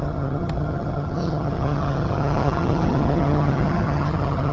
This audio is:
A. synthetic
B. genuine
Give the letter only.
A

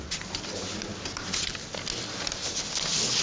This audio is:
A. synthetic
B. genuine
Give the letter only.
B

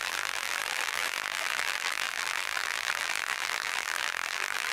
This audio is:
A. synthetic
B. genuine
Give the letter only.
A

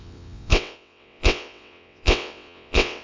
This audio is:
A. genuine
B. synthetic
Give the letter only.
B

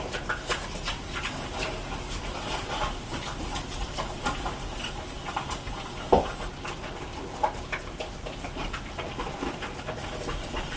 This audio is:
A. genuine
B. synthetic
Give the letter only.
A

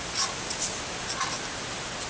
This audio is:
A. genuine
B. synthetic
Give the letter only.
A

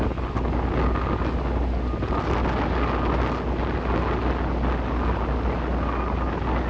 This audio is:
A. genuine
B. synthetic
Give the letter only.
A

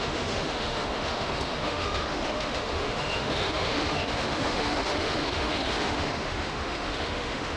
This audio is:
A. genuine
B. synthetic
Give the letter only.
B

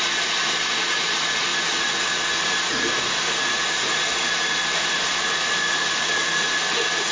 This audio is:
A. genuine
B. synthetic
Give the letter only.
B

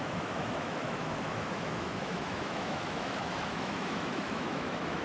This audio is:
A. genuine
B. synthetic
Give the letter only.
B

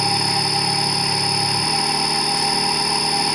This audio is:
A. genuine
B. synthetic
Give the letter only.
A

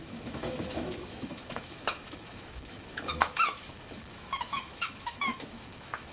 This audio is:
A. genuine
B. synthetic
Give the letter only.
B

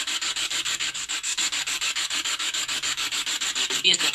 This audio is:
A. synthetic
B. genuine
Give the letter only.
A